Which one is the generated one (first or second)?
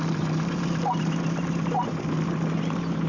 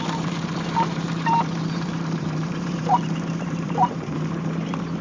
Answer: second